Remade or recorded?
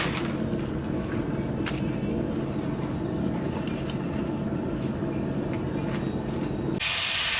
recorded